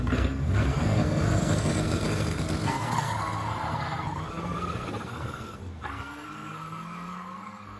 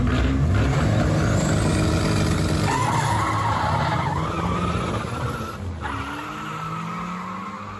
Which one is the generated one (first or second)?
first